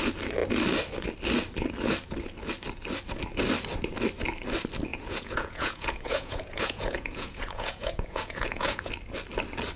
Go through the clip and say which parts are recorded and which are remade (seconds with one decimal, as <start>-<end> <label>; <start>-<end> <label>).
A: 0.0-4.9 recorded; 4.9-8.9 remade; 8.9-9.8 recorded